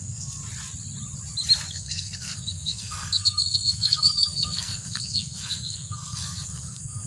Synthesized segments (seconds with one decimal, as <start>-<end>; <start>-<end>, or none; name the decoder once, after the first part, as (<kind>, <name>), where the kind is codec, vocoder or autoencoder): 0.0-0.4 (codec, SNAC); 1.7-7.1